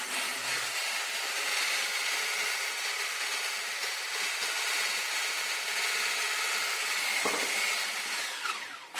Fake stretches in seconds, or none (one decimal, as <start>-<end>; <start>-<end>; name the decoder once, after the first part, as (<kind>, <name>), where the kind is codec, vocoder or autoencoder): none